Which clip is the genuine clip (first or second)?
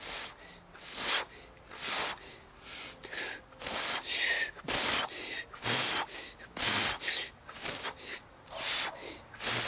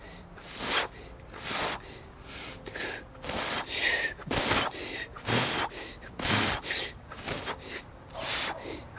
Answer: first